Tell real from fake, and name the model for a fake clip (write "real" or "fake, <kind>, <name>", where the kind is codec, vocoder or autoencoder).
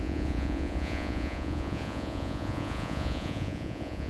fake, vocoder, Vocos